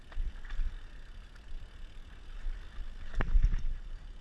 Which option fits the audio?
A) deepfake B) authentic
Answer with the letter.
B